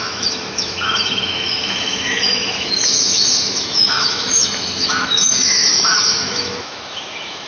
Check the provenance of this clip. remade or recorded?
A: remade